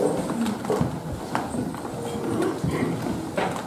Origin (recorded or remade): recorded